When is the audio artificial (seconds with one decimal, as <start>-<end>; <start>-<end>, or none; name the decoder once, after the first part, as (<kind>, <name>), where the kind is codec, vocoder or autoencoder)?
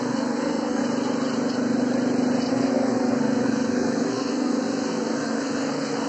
0.0-0.8 (codec, SNAC); 2.5-6.1